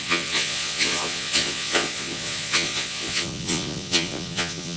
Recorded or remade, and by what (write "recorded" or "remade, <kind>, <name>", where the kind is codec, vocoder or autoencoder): remade, vocoder, Vocos